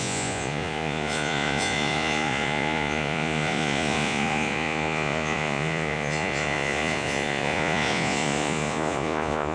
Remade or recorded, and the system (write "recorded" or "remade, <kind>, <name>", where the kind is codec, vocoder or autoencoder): remade, vocoder, Vocos